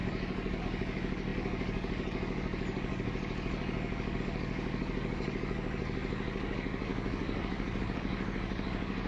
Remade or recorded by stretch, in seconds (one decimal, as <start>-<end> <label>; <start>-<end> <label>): 0.0-9.1 remade